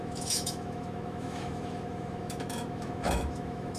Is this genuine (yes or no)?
no